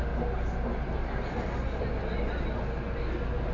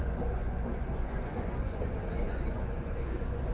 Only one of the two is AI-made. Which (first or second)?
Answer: second